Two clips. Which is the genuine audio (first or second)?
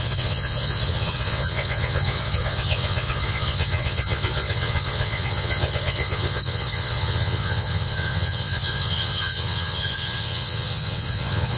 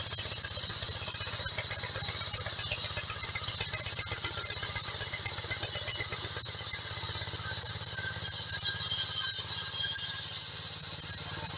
second